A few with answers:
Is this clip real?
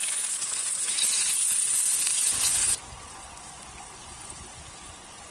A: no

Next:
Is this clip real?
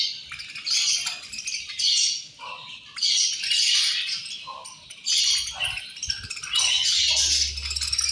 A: yes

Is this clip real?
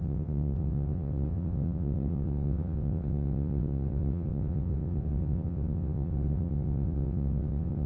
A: no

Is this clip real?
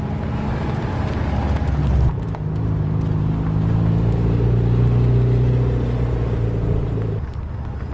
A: yes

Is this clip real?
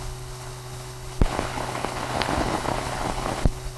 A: no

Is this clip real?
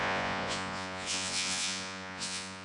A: no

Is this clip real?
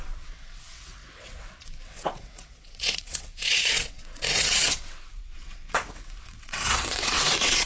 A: no